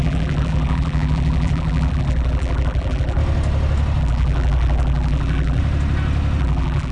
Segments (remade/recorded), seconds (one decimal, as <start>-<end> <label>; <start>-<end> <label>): 0.0-3.2 remade; 3.2-4.0 recorded; 4.0-5.6 remade; 5.6-6.4 recorded; 6.4-6.9 remade